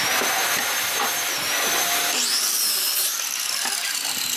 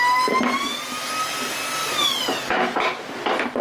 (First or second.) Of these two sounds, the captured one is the second